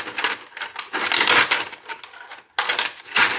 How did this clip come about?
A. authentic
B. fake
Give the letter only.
A